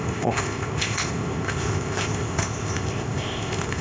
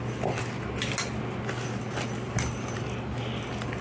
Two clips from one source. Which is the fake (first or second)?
first